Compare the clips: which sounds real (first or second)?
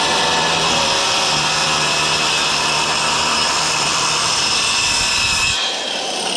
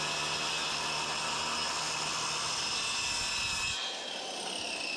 second